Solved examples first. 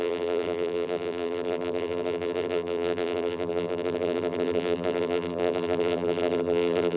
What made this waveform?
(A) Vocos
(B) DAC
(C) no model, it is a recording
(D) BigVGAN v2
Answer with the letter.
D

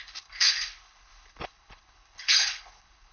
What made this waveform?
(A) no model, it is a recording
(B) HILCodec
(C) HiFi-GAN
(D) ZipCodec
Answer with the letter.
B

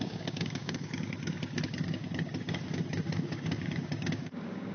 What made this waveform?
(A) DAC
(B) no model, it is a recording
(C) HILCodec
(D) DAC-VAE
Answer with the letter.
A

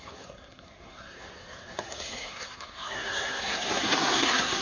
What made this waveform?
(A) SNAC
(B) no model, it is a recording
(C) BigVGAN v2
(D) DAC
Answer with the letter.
A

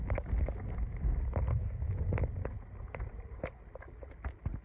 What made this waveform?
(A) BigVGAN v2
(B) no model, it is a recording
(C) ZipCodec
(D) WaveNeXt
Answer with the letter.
B